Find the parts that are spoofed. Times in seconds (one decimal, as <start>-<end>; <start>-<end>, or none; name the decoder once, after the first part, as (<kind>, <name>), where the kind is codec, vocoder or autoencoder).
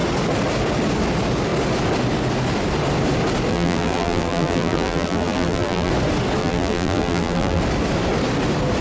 3.5-5.9 (vocoder, BigVGAN v2); 6.4-7.6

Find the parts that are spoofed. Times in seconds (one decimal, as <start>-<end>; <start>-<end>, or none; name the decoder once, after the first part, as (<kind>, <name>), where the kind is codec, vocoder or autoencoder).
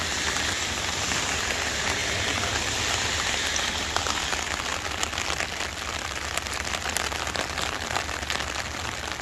none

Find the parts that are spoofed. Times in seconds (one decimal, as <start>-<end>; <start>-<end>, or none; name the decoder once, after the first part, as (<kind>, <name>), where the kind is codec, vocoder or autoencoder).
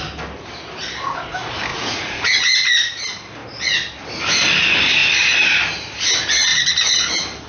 1.7-2.4 (vocoder, Vocos); 6.5-7.1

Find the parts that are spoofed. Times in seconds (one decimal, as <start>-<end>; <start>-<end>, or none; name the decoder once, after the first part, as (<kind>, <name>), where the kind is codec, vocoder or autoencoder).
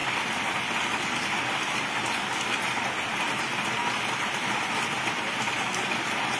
none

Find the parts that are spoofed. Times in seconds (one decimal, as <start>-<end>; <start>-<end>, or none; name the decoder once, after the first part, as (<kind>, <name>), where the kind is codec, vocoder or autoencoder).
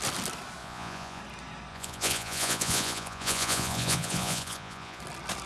0.6-1.2 (vocoder, Vocos); 1.7-5.0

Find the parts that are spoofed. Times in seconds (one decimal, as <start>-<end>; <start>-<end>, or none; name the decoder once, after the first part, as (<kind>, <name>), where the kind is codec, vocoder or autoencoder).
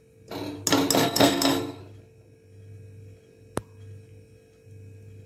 1.0-1.8 (codec, SNAC)